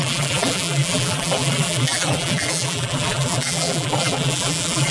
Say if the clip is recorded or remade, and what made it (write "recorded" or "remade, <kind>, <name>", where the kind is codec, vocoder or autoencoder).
remade, vocoder, BigVGAN v2